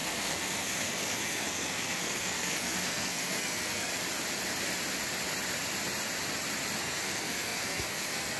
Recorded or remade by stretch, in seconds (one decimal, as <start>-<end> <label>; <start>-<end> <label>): 0.0-3.9 remade; 3.9-6.8 recorded; 6.8-8.4 remade